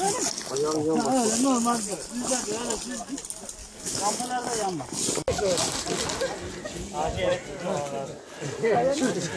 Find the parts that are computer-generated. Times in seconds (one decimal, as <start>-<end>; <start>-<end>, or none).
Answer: 3.6-4.2